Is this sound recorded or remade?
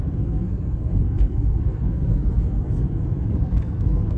remade